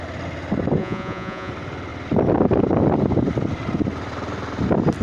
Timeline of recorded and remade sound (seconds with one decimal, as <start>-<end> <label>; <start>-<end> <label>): 0.0-0.8 recorded; 0.8-1.5 remade; 1.5-5.0 recorded